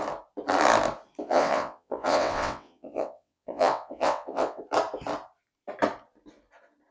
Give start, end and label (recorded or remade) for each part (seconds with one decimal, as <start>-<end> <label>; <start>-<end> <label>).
0.0-1.2 recorded; 1.2-4.6 remade; 4.6-6.9 recorded